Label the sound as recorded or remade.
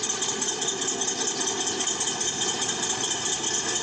recorded